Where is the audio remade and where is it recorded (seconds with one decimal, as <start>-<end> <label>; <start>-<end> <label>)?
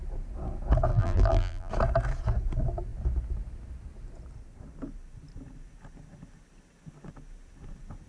0.0-0.9 recorded; 0.9-1.7 remade; 1.7-8.1 recorded